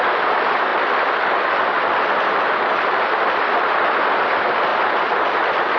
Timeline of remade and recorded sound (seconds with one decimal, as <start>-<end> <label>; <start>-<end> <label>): 0.0-5.8 recorded